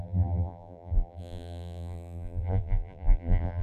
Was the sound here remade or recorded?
remade